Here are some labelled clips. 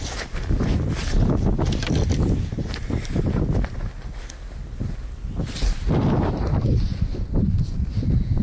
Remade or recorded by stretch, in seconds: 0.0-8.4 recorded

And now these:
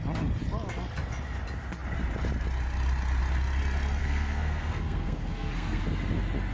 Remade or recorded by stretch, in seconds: 0.0-4.0 recorded; 4.0-5.8 remade; 5.8-6.5 recorded

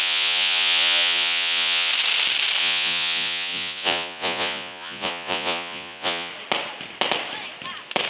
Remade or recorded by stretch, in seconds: 0.0-1.9 remade; 1.9-2.6 recorded; 2.6-6.3 remade; 6.3-8.1 recorded

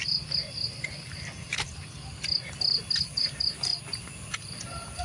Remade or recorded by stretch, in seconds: 0.0-5.0 recorded

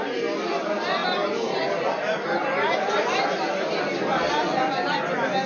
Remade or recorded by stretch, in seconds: 0.0-5.5 recorded

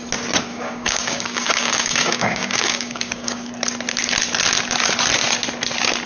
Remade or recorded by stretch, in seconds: 0.0-0.5 recorded; 0.5-3.5 remade; 3.5-6.1 recorded